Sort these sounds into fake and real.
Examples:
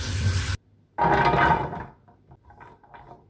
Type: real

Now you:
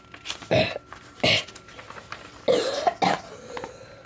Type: real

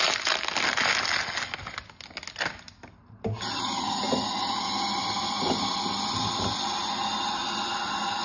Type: real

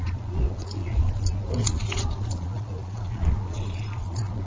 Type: fake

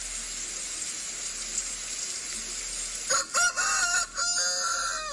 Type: real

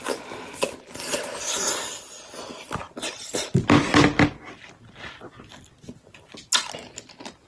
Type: real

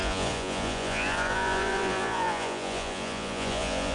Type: fake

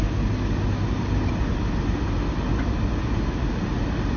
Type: real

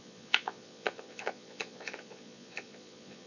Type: fake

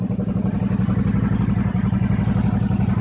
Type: real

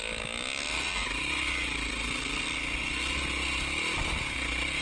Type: real